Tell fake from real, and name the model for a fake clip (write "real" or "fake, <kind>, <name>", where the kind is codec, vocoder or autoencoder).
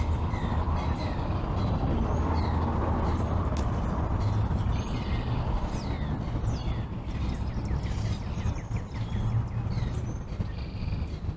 real